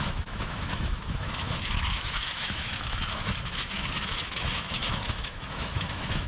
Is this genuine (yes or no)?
no